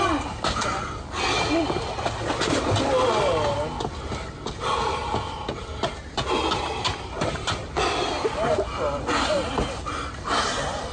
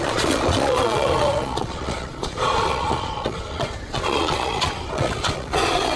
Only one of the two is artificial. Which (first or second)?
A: second